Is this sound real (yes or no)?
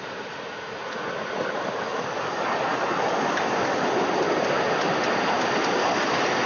yes